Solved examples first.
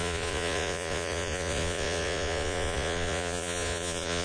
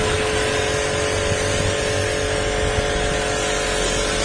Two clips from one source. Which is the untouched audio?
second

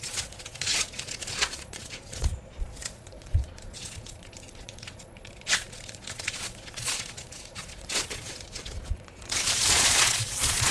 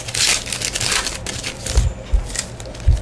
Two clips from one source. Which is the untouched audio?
second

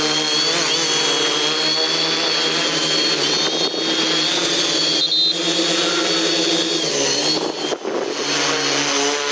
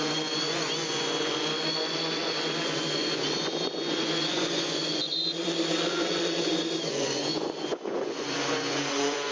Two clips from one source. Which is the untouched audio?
first